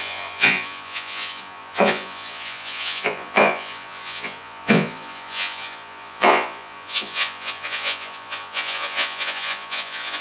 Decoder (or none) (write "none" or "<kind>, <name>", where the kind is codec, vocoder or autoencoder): vocoder, Vocos